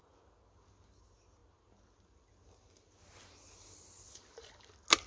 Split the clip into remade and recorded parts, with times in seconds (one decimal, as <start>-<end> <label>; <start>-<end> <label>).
0.0-5.1 recorded